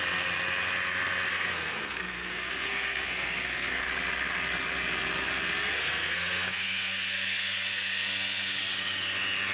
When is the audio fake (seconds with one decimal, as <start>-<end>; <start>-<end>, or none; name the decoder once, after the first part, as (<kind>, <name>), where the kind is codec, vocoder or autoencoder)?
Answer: 1.3-3.8 (codec, SNAC); 5.8-8.6

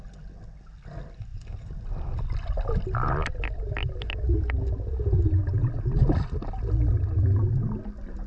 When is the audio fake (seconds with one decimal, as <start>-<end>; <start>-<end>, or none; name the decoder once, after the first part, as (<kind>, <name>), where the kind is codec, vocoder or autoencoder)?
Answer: none

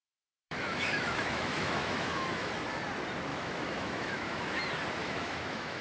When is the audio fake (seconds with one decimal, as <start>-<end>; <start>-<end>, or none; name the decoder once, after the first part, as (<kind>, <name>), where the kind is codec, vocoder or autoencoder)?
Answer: 0.0-2.5 (autoencoder, DAC-VAE); 3.3-4.6; 5.0-5.8

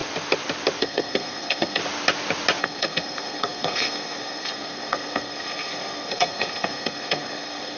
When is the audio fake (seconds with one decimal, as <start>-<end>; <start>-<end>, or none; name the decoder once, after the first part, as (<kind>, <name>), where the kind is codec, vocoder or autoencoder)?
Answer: 0.8-1.8 (codec, SNAC); 2.6-7.8

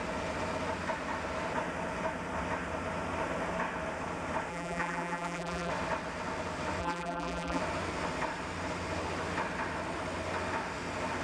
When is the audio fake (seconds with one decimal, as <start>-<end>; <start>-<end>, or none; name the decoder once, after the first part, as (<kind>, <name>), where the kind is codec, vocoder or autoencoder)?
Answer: 4.5-5.7 (vocoder, BigVGAN v2); 6.8-7.6

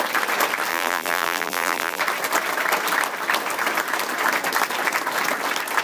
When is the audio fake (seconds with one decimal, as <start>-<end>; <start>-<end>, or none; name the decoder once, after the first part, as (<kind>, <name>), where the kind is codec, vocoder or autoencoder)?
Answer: 0.7-2.0 (vocoder, BigVGAN v2)